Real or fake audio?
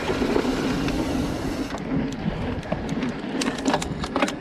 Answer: real